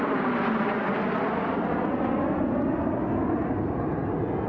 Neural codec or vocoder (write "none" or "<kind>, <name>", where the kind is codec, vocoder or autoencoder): none